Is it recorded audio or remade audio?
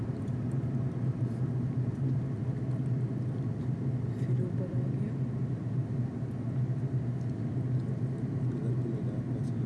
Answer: recorded